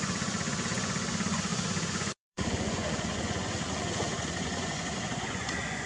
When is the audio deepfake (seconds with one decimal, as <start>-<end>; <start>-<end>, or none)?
0.0-5.9